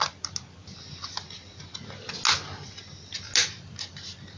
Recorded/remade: recorded